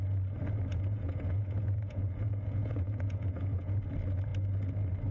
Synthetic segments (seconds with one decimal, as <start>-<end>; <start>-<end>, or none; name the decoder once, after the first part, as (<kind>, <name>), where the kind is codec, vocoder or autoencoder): 0.7-3.8 (vocoder, Vocos)